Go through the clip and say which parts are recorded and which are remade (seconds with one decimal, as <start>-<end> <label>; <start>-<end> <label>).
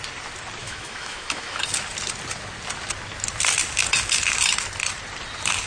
0.0-0.6 recorded; 0.6-1.6 remade; 1.6-5.7 recorded